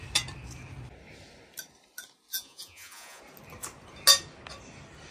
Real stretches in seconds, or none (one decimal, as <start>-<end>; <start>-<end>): 0.0-2.3; 3.2-5.1